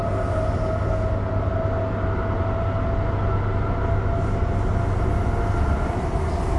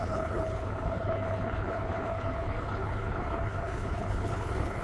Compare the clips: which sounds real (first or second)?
first